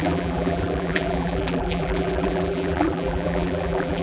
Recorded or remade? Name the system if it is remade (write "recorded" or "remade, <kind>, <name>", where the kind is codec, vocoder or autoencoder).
remade, vocoder, BigVGAN v2